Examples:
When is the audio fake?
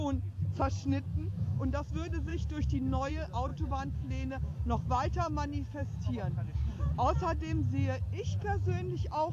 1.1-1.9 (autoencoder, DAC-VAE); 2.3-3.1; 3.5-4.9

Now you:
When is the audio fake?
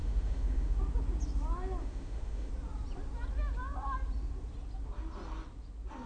0.0-0.8 (autoencoder, DAC-VAE); 1.8-2.5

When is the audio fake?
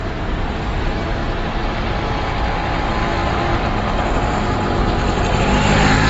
none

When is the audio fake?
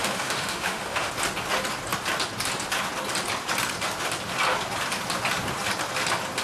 0.0-1.1 (autoencoder, DAC-VAE)